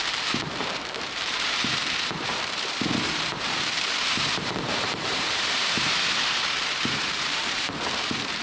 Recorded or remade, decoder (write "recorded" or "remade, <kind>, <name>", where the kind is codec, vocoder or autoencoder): remade, vocoder, BigVGAN v2